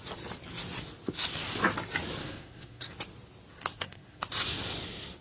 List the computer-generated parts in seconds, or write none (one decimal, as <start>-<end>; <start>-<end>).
2.2-2.9; 3.7-4.2